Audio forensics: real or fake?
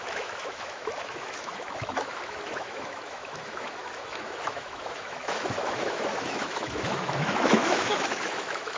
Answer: fake